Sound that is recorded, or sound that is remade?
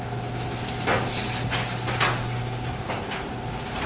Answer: recorded